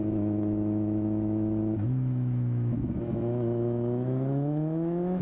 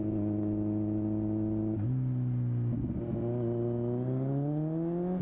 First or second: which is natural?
second